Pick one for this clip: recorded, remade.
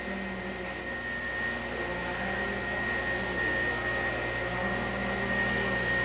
recorded